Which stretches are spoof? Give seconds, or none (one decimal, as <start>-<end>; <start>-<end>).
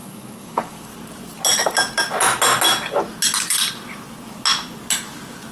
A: 0.0-0.9